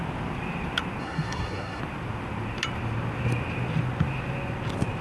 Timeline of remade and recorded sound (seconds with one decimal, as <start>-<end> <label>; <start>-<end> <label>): 0.0-1.0 recorded; 1.0-1.8 remade; 1.8-5.0 recorded